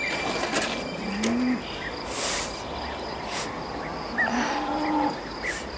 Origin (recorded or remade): recorded